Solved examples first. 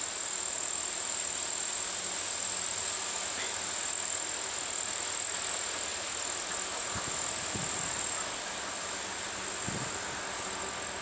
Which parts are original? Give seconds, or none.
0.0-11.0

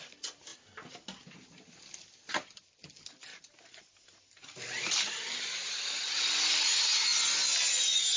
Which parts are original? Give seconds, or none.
0.0-8.2

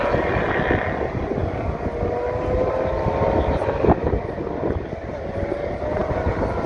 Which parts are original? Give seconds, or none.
0.0-6.7

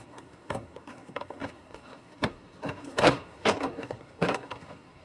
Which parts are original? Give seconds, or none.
none

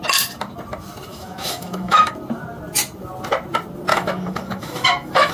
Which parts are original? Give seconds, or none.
0.0-1.1; 2.1-3.9

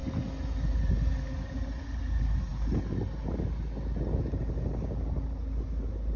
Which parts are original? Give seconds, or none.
0.0-6.2